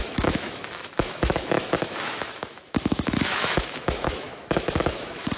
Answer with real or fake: fake